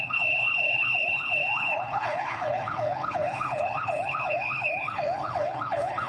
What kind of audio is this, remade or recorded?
remade